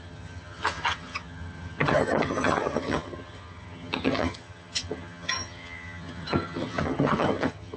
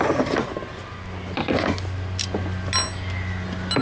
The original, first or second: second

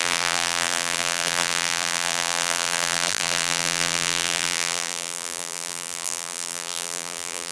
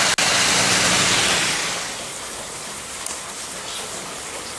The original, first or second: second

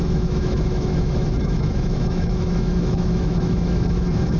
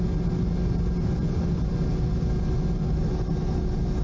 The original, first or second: second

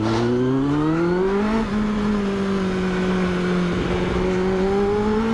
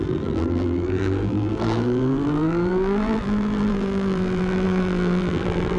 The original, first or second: first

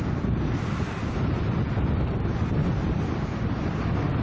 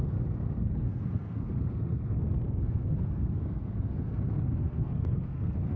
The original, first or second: first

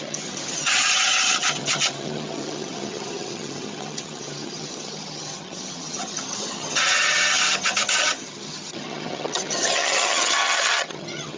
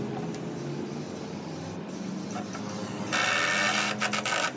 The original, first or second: second